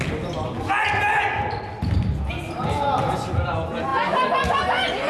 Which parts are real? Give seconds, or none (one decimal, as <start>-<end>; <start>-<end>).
0.0-5.1